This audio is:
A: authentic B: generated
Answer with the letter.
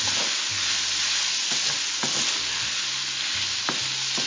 A